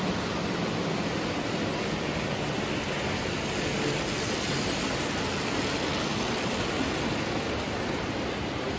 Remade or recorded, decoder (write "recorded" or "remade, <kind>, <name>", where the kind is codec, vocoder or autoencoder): recorded